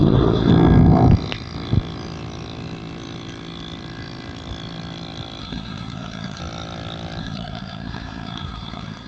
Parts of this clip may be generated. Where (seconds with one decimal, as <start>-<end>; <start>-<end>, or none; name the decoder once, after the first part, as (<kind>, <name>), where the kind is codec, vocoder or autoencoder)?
0.0-0.5 (codec, SNAC); 5.4-6.4; 7.2-9.1